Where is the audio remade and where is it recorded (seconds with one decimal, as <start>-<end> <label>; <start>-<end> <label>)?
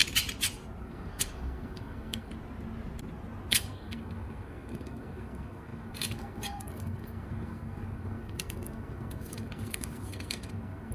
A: 0.0-0.8 recorded; 0.8-2.3 remade; 2.3-3.5 recorded; 3.5-10.9 remade